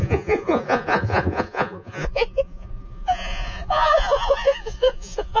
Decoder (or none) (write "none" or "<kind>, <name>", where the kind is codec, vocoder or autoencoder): vocoder, Vocos